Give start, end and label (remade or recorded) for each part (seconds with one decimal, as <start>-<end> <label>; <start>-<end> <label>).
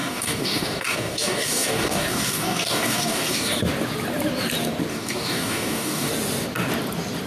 0.0-3.6 remade; 3.6-4.9 recorded; 4.9-6.1 remade; 6.1-7.3 recorded